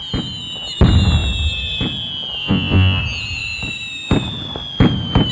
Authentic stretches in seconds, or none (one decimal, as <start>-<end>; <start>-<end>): 0.0-2.4; 3.0-5.3